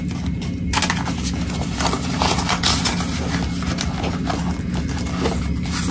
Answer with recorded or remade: recorded